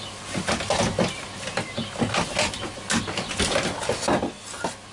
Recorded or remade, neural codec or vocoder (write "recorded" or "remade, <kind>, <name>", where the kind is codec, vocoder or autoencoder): recorded